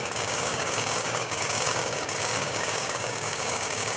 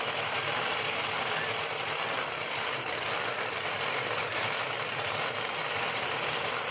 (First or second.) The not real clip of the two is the first